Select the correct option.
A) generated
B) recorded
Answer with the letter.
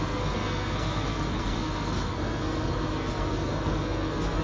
A